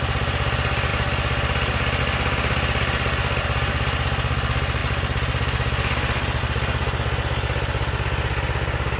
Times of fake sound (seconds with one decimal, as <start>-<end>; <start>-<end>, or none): none